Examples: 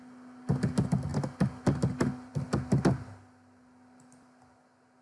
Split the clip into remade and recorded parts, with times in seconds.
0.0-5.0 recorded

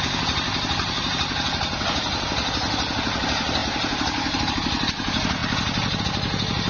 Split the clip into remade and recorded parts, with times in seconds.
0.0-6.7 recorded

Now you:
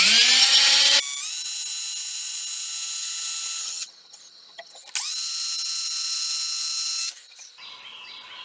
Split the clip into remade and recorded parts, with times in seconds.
0.0-0.4 recorded; 0.4-1.0 remade; 1.0-3.6 recorded; 3.6-4.8 remade; 4.8-8.4 recorded